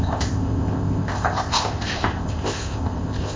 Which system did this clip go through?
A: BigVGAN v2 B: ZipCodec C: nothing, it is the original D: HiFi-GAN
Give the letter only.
B